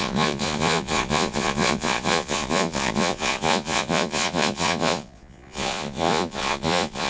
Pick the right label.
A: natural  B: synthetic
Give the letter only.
B